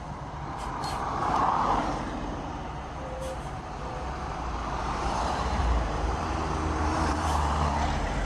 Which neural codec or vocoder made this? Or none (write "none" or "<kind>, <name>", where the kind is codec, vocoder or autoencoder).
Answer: vocoder, BigVGAN v2